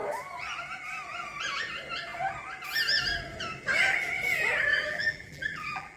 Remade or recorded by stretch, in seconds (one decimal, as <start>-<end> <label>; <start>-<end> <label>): 0.0-4.7 recorded; 4.7-6.0 remade

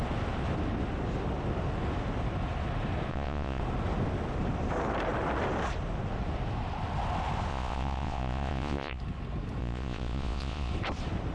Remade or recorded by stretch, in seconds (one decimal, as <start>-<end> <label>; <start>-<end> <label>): 0.0-3.1 recorded; 3.1-3.6 remade; 3.6-7.5 recorded; 7.5-9.0 remade; 9.0-9.6 recorded; 9.6-10.7 remade; 10.7-11.3 recorded

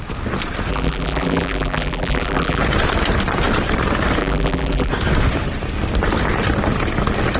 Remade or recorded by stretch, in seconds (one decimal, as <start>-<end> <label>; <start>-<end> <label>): 0.0-0.7 recorded; 0.7-2.6 remade; 2.6-4.2 recorded; 4.2-4.9 remade; 4.9-7.4 recorded

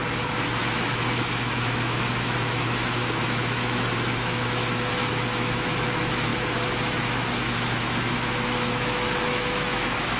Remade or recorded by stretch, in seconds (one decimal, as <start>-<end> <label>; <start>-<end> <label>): 0.0-0.6 recorded; 0.6-6.3 remade; 6.3-7.0 recorded; 7.0-10.2 remade